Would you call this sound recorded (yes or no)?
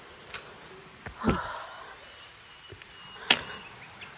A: yes